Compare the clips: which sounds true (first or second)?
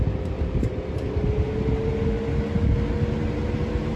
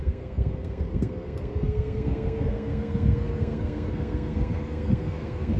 first